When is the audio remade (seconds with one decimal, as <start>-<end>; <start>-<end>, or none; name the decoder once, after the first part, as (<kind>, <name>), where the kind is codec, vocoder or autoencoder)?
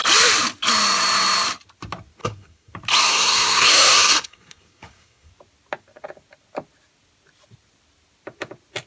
2.2-2.7 (codec, SNAC); 3.1-5.3